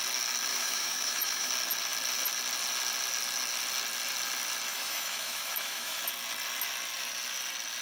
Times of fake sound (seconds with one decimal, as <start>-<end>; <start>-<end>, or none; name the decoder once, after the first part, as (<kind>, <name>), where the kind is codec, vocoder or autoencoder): 0.5-1.5 (autoencoder, DAC-VAE); 4.7-6.0